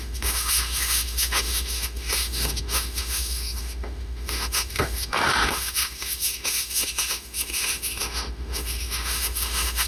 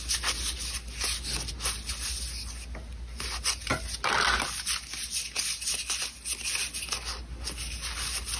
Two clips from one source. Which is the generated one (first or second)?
first